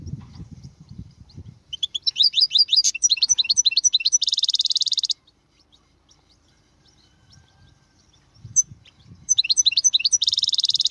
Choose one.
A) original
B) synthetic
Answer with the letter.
B